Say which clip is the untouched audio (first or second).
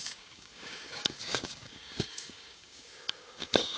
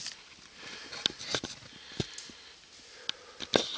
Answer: second